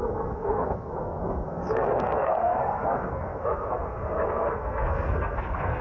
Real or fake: fake